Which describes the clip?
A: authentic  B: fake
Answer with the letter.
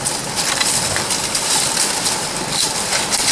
A